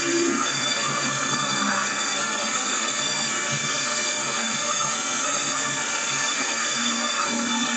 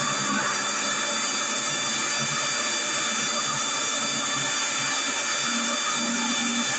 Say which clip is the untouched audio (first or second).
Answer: second